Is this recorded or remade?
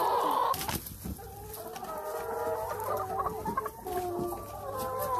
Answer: recorded